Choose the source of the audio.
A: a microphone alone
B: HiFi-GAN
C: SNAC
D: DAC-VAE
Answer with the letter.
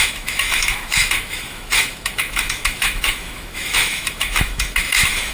D